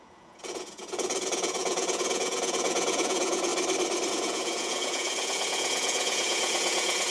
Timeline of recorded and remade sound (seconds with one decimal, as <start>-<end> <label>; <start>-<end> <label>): 0.0-3.5 remade; 3.5-4.1 recorded; 4.1-7.1 remade